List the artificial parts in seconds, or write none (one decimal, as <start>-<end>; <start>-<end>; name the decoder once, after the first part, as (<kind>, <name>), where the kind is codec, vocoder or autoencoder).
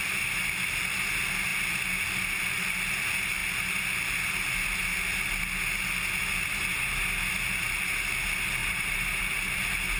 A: 8.6-9.2 (vocoder, BigVGAN v2)